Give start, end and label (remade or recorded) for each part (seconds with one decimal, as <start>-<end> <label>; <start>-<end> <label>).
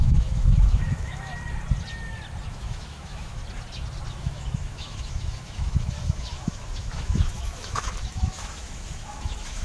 0.0-1.3 remade; 1.3-2.5 recorded; 2.5-3.4 remade; 3.4-4.1 recorded; 4.1-9.6 remade